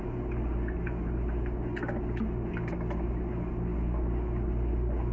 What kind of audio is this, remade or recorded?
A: recorded